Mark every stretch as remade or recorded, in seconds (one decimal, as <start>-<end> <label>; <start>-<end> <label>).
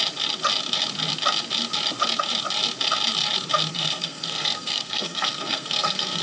0.0-3.7 recorded; 3.7-6.2 remade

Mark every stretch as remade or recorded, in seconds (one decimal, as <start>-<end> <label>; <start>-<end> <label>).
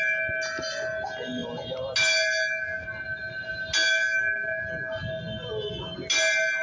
0.0-6.6 recorded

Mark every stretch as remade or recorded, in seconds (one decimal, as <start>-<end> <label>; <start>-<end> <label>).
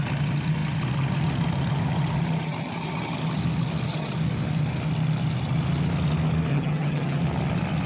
0.0-6.5 recorded; 6.5-7.2 remade; 7.2-7.9 recorded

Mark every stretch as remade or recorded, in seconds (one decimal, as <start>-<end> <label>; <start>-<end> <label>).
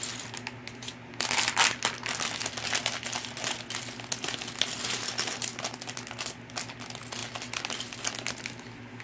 0.0-9.0 recorded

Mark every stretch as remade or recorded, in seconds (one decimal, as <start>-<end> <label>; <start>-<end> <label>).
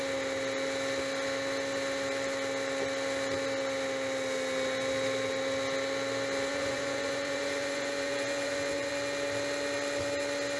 0.0-6.5 recorded; 6.5-8.9 remade; 8.9-10.6 recorded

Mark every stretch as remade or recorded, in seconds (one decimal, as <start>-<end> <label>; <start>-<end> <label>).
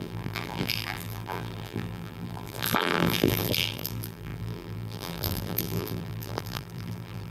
0.0-7.3 remade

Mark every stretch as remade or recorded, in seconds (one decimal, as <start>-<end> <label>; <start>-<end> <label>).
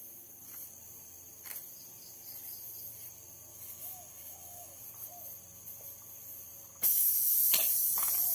0.0-3.5 recorded; 3.5-4.8 remade; 4.8-6.9 recorded; 6.9-7.5 remade; 7.5-8.3 recorded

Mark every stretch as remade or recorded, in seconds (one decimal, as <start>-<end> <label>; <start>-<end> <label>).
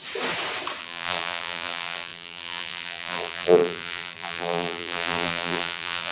0.0-0.8 recorded; 0.8-6.1 remade